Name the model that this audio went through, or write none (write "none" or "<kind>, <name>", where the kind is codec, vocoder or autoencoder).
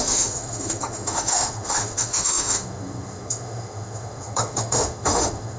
autoencoder, DAC-VAE